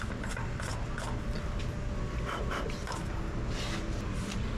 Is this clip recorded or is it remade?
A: recorded